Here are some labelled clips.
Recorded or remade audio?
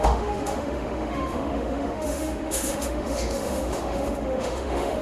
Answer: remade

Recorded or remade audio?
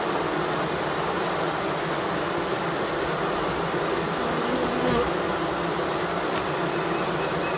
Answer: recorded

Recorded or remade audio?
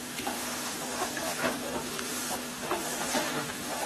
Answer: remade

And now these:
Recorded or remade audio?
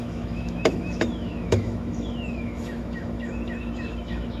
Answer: remade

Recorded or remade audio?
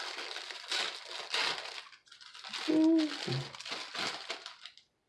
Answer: recorded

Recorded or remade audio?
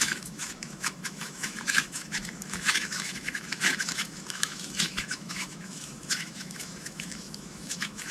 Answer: remade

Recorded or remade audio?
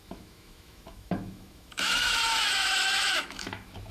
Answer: remade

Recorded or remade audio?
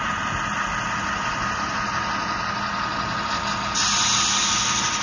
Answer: recorded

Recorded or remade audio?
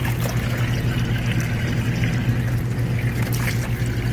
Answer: recorded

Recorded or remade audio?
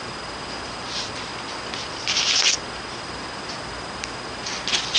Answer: recorded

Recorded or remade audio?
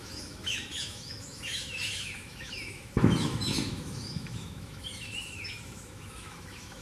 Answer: remade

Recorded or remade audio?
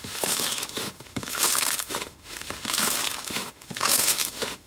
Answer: remade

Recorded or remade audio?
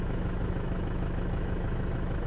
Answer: remade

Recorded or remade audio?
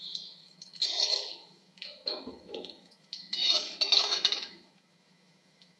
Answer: remade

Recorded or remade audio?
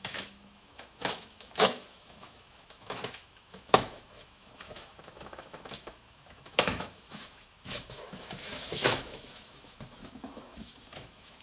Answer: remade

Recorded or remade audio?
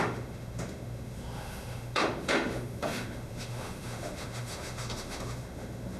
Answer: remade